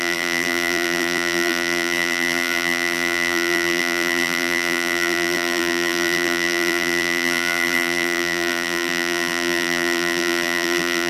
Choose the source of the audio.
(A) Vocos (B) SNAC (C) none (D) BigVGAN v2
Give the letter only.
D